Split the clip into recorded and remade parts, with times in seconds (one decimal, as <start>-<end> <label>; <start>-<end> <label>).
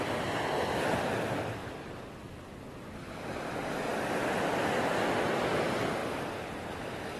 0.0-7.2 remade